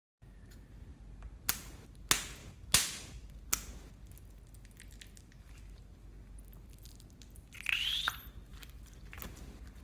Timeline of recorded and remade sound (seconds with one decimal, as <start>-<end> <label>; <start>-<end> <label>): 0.0-8.5 recorded; 8.5-9.2 remade; 9.2-9.8 recorded